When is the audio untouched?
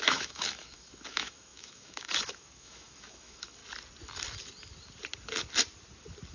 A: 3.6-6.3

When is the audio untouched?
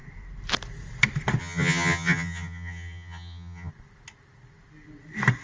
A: 0.0-1.4; 3.7-5.4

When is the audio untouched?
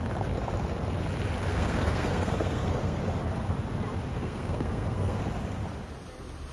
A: 0.0-1.5; 3.0-4.1; 5.2-6.5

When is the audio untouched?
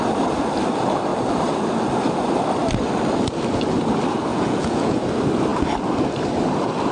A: 0.0-4.3; 5.0-6.9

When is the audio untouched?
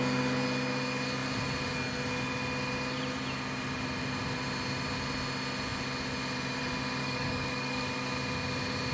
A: 0.0-7.0; 8.1-8.9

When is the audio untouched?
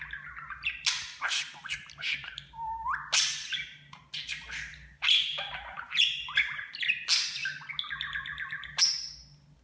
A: 0.0-1.6; 2.7-4.7; 6.2-9.6